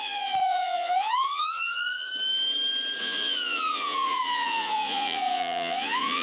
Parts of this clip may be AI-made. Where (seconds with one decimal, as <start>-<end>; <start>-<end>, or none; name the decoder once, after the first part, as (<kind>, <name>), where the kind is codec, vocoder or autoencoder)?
0.0-2.1 (vocoder, Vocos); 3.0-6.2